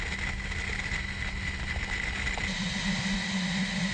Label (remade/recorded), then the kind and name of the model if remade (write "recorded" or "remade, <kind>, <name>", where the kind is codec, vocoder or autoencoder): recorded